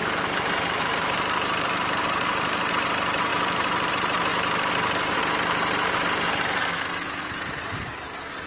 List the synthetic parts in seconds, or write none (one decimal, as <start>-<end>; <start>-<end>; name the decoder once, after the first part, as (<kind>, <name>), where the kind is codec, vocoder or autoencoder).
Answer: 0.0-2.7 (vocoder, BigVGAN v2); 3.3-3.9